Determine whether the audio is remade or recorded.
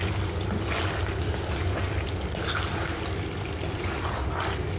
recorded